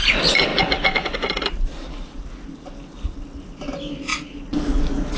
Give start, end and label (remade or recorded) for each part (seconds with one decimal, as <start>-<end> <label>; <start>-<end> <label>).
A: 0.0-5.2 recorded